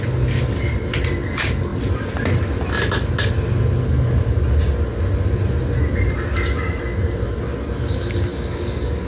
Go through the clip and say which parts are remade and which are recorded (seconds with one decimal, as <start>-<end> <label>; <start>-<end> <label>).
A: 0.0-8.3 recorded; 8.3-9.1 remade